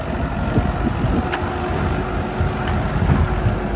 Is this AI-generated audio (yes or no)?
no